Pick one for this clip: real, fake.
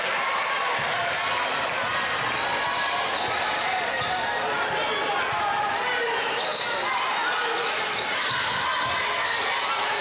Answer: real